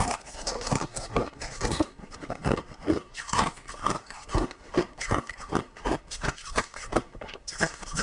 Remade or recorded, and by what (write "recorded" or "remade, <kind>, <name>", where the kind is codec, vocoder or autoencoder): remade, codec, SNAC